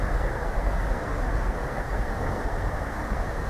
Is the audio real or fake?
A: fake